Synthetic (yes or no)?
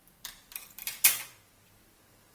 no